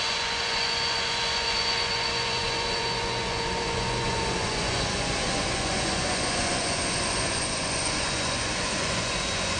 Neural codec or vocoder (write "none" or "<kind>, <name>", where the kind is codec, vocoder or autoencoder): vocoder, Vocos